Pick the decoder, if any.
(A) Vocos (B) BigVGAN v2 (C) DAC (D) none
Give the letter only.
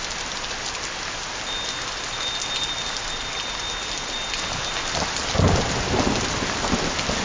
D